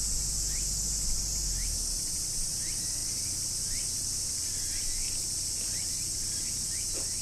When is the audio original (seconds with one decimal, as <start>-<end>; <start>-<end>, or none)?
0.0-7.2